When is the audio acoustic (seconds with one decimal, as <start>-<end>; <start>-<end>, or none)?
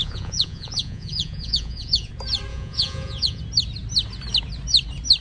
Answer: 2.1-2.5; 3.4-5.2